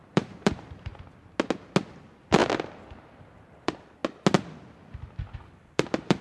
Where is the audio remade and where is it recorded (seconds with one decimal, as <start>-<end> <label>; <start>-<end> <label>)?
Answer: 0.0-0.9 remade; 0.9-1.9 recorded; 1.9-4.0 remade; 4.0-5.4 recorded; 5.4-6.2 remade